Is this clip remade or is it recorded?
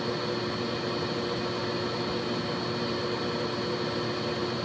recorded